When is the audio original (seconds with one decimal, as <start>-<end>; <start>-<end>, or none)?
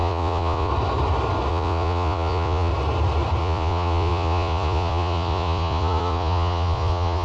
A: 0.7-1.5; 2.7-3.4